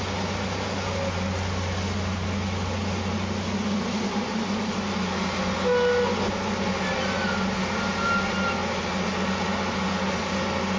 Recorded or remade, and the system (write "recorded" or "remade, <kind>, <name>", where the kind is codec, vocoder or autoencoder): recorded